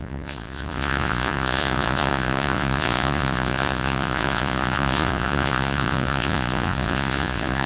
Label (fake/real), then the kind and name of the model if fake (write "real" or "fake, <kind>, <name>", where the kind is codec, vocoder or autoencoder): fake, vocoder, Vocos